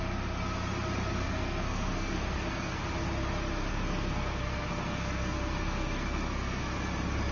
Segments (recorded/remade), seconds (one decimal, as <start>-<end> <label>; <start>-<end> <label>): 0.0-1.2 recorded; 1.2-2.8 remade; 2.8-3.7 recorded; 3.7-6.6 remade; 6.6-7.3 recorded